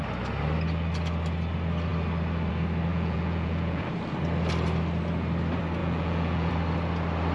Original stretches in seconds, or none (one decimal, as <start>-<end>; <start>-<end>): 0.0-2.9; 3.9-5.8; 6.5-7.3